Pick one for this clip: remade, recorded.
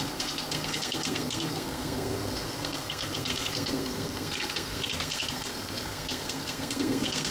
remade